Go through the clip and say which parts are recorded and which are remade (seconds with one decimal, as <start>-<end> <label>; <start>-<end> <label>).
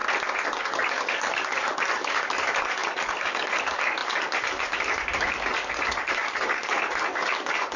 0.0-0.6 recorded; 0.6-7.8 remade